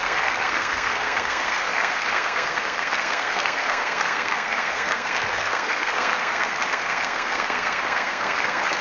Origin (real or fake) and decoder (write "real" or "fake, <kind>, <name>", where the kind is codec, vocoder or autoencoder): fake, codec, SNAC